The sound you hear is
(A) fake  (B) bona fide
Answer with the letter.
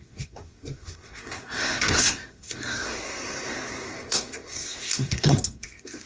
A